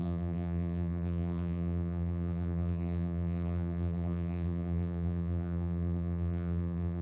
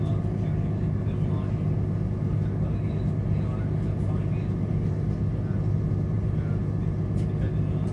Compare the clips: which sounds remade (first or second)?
first